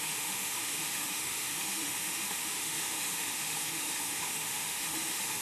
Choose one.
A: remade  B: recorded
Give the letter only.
A